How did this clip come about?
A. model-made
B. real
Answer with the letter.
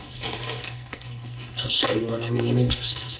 A